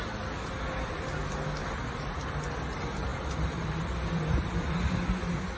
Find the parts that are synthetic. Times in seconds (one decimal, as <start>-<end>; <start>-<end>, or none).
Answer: 1.6-2.6; 3.1-4.9